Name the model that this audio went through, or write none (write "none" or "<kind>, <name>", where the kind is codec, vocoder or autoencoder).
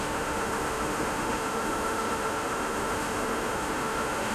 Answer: autoencoder, DAC-VAE